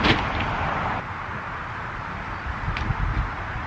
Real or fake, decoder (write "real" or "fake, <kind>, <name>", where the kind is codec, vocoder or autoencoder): real